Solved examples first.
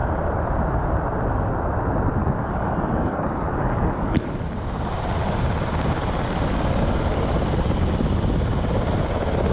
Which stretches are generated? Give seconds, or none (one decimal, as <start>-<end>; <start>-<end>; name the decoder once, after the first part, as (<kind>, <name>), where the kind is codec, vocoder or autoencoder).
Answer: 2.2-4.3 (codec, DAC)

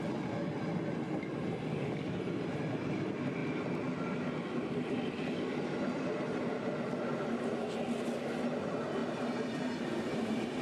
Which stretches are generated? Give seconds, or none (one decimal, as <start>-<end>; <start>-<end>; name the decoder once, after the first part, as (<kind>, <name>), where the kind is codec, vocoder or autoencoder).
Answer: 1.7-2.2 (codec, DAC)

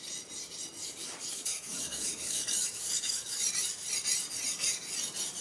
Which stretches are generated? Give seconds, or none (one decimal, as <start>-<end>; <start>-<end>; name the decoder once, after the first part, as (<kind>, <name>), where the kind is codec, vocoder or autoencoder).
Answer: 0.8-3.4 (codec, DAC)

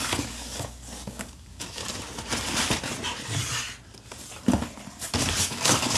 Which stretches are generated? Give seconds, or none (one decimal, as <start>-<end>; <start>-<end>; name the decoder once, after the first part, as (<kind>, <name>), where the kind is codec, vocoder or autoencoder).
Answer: 0.0-1.8 (codec, DAC); 5.4-6.0